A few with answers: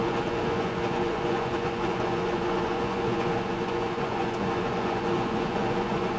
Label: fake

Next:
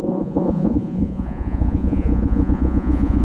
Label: fake